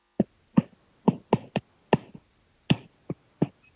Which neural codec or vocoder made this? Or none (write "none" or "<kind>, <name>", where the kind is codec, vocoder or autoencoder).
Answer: none